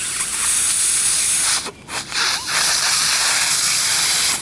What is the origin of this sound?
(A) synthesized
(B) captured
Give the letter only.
B